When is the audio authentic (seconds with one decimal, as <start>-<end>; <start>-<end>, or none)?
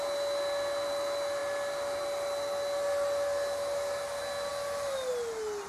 0.0-5.7